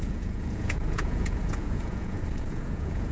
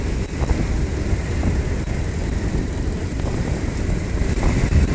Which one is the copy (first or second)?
first